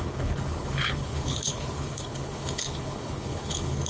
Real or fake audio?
fake